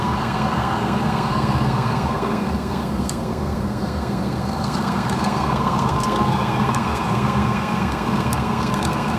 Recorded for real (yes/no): no